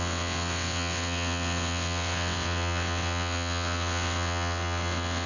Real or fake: fake